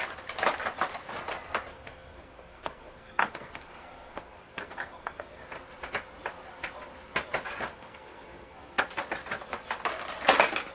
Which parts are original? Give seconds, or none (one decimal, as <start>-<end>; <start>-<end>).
0.0-1.7; 5.4-7.7; 8.8-10.7